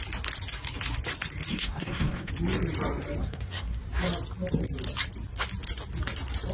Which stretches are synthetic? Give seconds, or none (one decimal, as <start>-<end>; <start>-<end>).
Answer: 1.5-2.3; 3.2-3.8